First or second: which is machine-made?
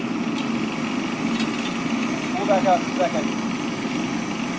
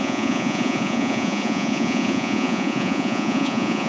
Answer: second